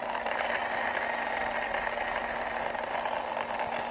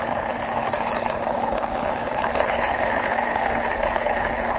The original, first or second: first